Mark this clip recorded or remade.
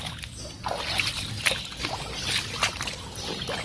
recorded